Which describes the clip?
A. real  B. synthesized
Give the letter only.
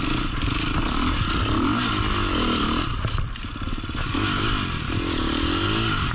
A